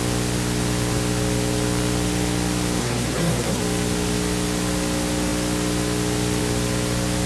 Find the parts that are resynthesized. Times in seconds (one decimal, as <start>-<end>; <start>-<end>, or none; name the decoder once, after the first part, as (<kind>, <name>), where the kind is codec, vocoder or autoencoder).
2.8-3.6 (codec, SNAC)

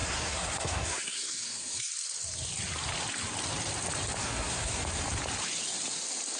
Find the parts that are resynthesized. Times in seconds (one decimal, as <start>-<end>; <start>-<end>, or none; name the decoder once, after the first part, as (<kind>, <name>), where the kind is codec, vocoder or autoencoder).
0.0-1.9 (codec, SNAC); 4.2-4.8